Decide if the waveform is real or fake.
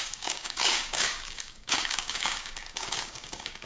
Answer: fake